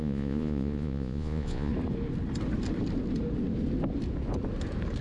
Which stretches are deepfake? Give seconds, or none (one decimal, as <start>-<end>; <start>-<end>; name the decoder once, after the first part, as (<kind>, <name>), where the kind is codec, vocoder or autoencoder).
0.0-1.7 (vocoder, Vocos)